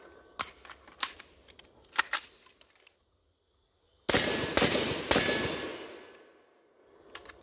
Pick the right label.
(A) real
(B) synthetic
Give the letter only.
A